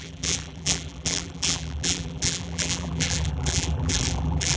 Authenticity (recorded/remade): remade